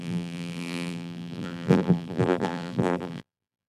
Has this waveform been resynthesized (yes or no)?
yes